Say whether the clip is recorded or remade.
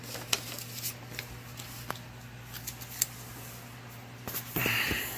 recorded